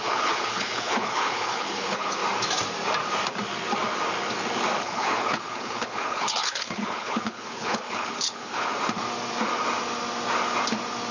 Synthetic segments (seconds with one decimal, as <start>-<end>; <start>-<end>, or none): 0.0-2.2; 4.8-8.7

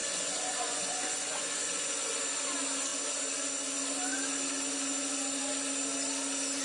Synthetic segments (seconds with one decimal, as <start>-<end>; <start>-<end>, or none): 0.0-2.2

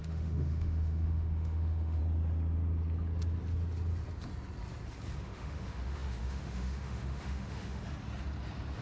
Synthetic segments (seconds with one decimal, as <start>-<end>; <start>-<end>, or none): 0.0-2.0; 5.2-7.8